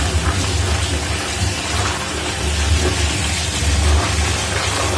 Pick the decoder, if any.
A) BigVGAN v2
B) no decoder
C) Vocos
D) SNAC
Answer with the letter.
B